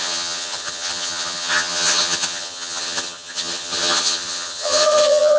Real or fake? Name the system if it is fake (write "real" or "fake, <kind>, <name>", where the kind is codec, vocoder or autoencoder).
fake, vocoder, HiFi-GAN